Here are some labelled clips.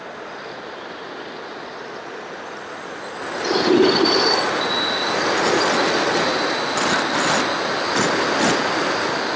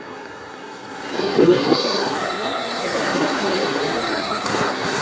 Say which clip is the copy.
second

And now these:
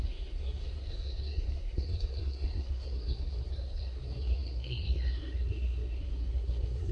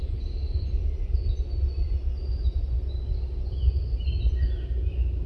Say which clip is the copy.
first